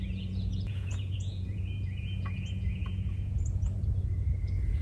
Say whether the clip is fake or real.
fake